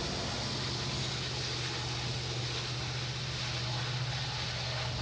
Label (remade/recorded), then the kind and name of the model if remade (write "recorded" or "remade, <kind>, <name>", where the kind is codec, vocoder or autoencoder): recorded